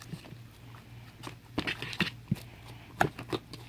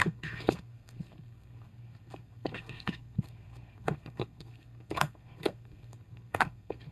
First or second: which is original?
first